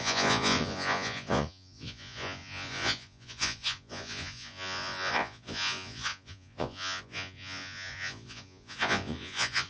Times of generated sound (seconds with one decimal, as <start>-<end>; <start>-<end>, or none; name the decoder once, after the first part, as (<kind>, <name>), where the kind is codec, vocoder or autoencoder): 0.0-9.7 (vocoder, Vocos)